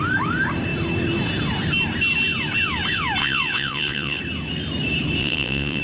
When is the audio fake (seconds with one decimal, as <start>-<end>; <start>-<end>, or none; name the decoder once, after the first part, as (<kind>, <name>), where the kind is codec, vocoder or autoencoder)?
3.2-4.2 (vocoder, WaveNeXt); 5.2-5.8